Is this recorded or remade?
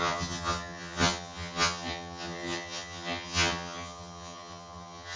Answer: remade